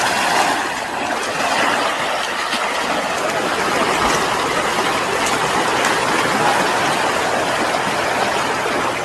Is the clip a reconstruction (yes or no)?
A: no